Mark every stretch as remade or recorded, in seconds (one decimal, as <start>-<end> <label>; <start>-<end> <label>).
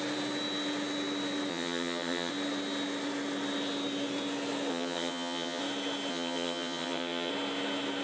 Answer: 0.0-1.5 recorded; 1.5-2.3 remade; 2.3-4.7 recorded; 4.7-5.6 remade; 5.6-6.1 recorded; 6.1-7.3 remade; 7.3-8.0 recorded